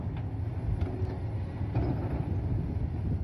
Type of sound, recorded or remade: recorded